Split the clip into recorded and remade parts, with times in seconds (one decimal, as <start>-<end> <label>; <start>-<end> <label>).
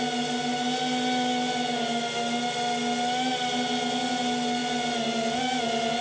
0.0-6.0 recorded